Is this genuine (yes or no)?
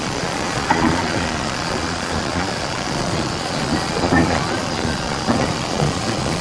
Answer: no